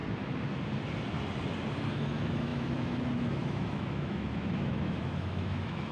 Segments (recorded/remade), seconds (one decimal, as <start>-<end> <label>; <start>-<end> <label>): 0.0-1.9 recorded; 1.9-5.9 remade